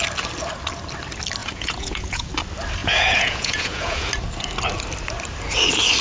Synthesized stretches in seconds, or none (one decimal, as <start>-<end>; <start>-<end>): 1.4-2.3; 2.8-4.1